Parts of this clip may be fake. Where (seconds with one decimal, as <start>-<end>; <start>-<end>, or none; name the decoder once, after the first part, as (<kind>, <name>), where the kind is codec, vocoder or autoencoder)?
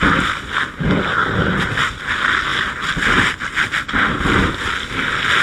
none